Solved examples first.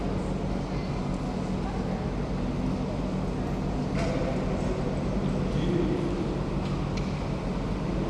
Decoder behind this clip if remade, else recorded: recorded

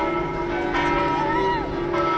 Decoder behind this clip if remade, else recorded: recorded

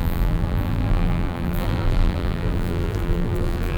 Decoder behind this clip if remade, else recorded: remade, vocoder, BigVGAN v2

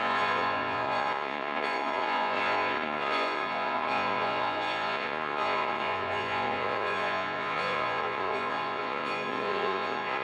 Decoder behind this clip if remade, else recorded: remade, vocoder, Vocos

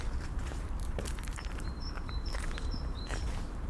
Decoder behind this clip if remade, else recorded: remade, vocoder, BigVGAN v2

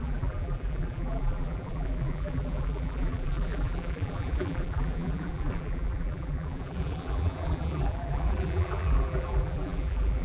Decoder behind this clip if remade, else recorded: remade, vocoder, BigVGAN v2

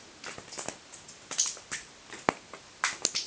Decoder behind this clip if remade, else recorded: recorded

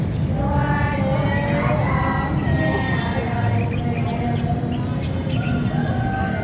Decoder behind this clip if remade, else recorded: recorded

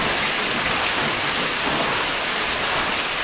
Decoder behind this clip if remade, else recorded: remade, vocoder, BigVGAN v2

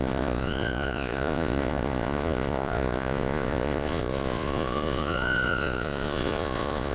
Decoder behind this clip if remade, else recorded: remade, vocoder, Vocos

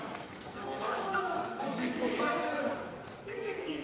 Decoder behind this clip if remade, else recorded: remade, codec, SNAC